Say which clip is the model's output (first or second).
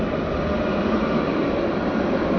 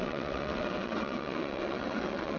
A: second